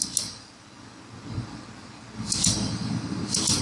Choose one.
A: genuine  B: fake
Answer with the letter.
A